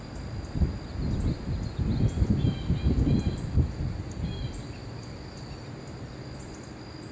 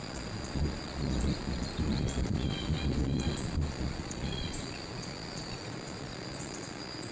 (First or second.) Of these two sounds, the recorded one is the first